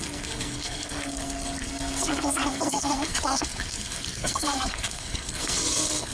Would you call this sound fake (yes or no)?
yes